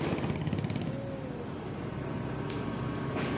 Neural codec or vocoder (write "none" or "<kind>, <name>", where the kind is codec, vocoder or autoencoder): none